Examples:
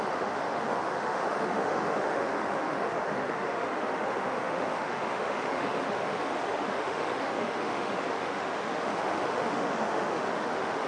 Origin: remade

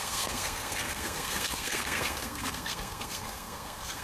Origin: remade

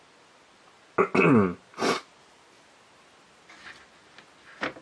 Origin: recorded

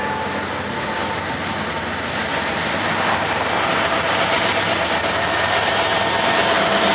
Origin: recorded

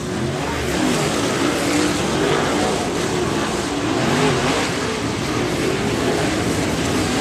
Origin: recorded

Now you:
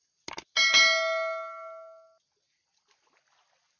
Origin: recorded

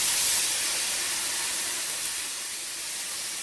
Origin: recorded